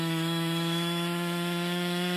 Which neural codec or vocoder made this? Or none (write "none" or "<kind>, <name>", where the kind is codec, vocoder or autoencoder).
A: autoencoder, DAC-VAE